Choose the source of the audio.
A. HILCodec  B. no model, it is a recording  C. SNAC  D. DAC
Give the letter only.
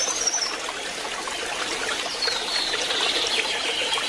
B